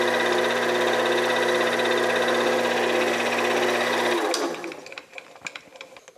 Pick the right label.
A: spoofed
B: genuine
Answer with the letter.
B